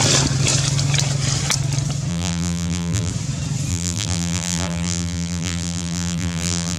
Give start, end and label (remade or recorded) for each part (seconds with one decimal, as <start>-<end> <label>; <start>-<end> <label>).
0.0-2.1 recorded; 2.1-3.1 remade; 3.1-3.7 recorded; 3.7-6.8 remade